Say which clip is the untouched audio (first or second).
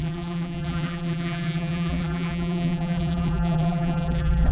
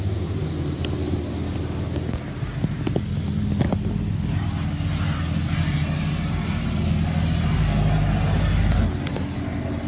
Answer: second